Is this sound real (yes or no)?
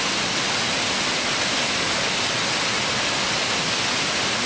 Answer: yes